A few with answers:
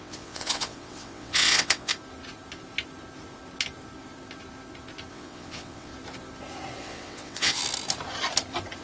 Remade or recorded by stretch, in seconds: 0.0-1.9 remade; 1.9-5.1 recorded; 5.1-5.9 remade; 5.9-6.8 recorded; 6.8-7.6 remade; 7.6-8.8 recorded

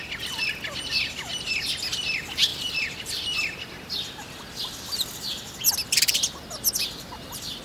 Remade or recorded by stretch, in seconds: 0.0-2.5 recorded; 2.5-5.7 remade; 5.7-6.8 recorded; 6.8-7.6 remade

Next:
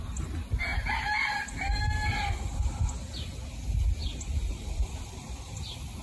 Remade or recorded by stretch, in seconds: 0.0-6.0 recorded